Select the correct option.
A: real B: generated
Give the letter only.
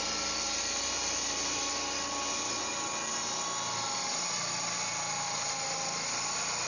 A